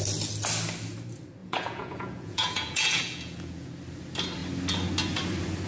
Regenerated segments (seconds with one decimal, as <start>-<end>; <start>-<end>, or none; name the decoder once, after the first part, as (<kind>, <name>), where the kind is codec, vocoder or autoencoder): 1.4-3.7 (vocoder, Vocos)